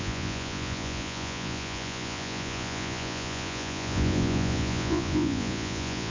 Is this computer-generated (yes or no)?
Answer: yes